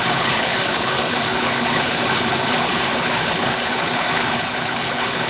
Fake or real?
fake